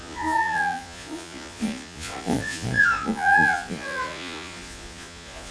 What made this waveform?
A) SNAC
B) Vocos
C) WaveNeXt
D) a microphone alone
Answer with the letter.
B